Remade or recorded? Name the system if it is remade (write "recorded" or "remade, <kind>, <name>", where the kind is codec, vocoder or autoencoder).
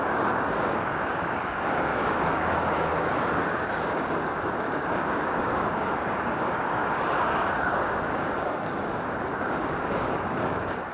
remade, codec, DAC